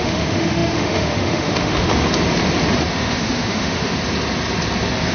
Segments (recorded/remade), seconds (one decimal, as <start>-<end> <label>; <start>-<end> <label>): 0.0-1.9 remade; 1.9-2.9 recorded; 2.9-3.9 remade; 3.9-5.1 recorded